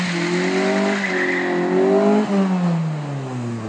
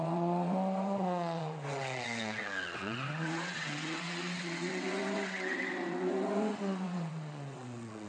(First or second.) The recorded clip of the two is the first